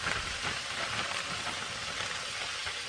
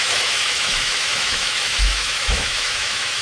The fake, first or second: second